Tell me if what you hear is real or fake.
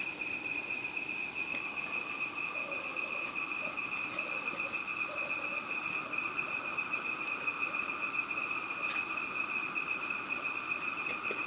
real